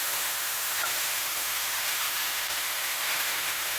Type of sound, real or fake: fake